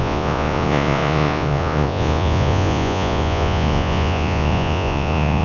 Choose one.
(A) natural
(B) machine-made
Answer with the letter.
B